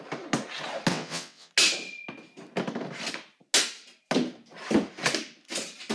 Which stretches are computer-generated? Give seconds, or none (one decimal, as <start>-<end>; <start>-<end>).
0.9-1.5